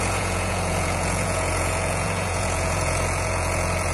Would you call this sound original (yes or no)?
no